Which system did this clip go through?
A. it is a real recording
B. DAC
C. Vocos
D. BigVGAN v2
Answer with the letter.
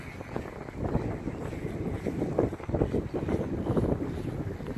D